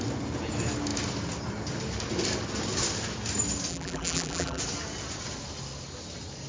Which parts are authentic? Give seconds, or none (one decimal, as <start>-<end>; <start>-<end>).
0.0-3.7; 4.6-6.5